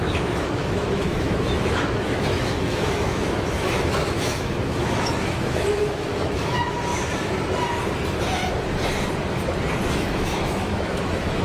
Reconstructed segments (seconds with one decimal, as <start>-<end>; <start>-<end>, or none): 0.0-6.9; 9.9-11.4